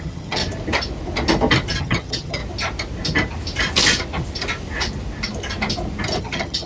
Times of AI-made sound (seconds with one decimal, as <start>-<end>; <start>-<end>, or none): 0.0-0.4; 1.8-2.4; 6.2-6.7